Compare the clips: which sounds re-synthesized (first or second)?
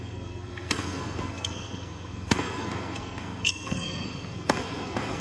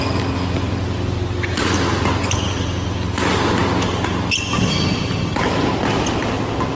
first